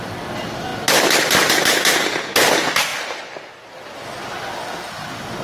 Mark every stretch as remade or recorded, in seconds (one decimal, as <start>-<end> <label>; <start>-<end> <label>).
0.0-5.4 recorded